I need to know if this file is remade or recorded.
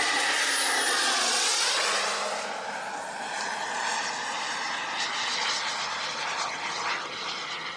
recorded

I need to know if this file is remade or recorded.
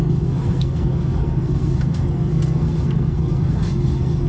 remade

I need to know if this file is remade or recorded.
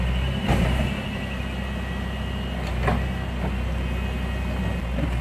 recorded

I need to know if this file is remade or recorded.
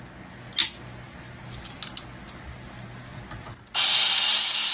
recorded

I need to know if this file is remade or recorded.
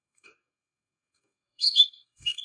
remade